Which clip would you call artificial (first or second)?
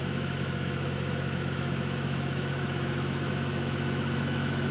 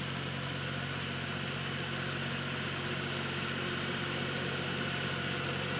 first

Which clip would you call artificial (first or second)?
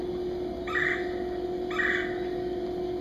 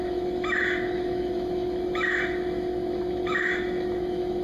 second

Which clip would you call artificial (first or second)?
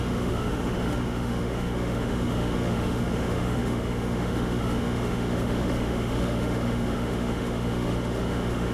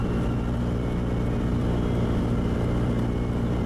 first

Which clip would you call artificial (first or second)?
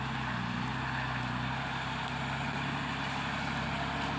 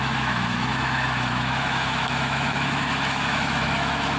second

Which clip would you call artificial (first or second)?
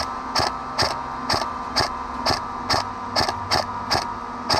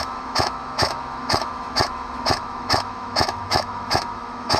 second